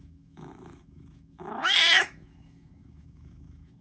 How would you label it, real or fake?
fake